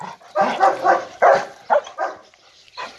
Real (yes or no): yes